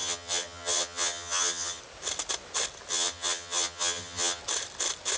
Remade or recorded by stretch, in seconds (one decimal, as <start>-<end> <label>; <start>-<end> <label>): 0.0-1.8 remade; 1.8-2.9 recorded; 2.9-4.4 remade; 4.4-5.2 recorded